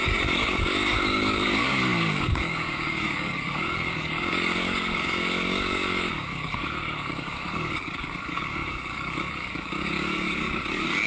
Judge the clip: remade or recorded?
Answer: remade